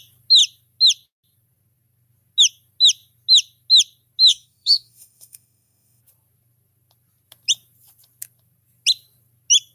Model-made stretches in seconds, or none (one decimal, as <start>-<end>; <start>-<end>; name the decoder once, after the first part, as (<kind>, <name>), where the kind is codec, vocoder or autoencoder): 4.3-6.0 (autoencoder, DAC-VAE)